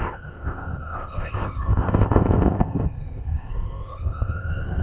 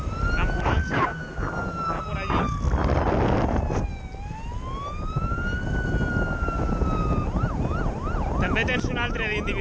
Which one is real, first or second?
second